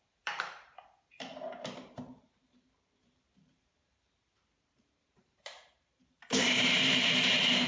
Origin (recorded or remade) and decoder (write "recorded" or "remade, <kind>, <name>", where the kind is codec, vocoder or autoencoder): remade, vocoder, BigVGAN v2